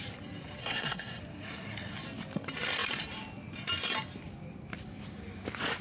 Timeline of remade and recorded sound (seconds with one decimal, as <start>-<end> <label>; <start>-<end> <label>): 0.0-0.6 recorded; 0.6-1.2 remade; 1.2-5.8 recorded